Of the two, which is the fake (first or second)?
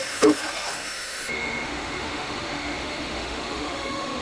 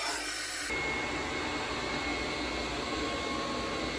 first